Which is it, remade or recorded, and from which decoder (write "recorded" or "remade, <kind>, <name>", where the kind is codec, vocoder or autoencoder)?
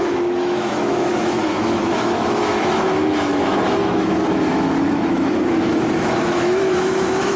remade, autoencoder, DAC-VAE